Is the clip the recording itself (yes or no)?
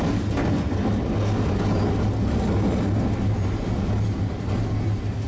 yes